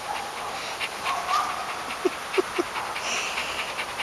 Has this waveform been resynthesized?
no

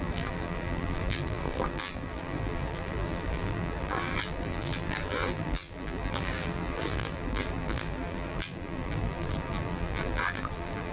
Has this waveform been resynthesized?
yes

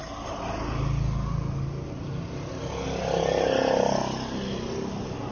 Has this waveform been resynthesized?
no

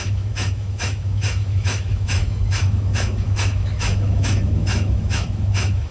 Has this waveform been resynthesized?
yes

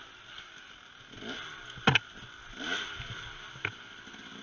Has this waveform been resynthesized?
no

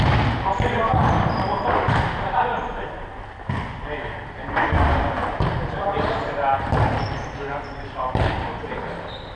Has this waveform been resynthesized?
no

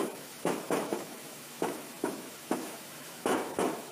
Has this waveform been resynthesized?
yes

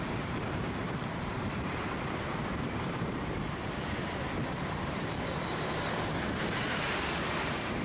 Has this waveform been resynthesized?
yes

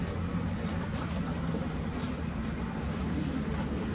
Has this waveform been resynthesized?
no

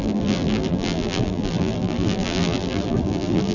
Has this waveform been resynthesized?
yes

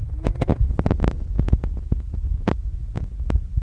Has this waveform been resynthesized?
no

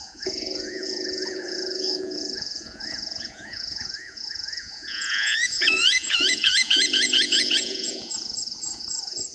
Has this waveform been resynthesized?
yes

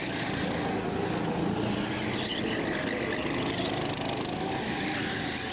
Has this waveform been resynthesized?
no